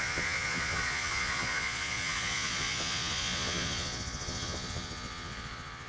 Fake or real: fake